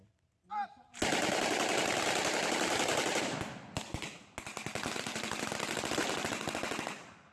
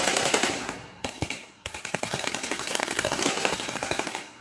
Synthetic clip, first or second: second